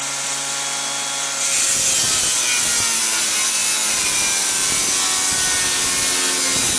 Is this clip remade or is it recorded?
recorded